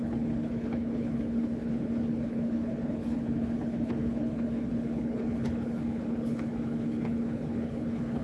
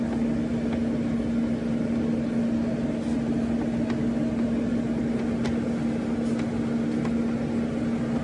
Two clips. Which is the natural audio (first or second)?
second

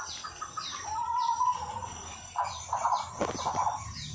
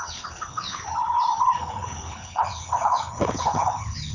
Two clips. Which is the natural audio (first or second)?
first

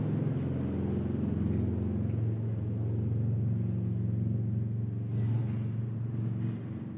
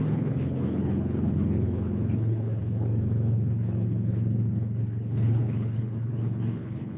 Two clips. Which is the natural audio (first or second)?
first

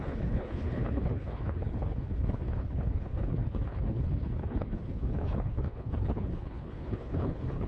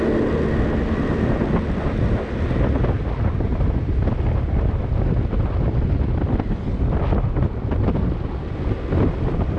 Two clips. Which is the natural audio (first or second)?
second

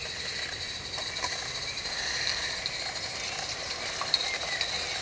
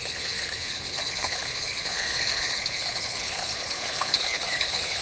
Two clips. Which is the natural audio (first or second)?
first